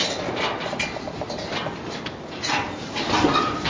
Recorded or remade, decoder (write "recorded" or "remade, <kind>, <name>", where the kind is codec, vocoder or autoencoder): recorded